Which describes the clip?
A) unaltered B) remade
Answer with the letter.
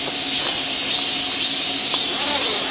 A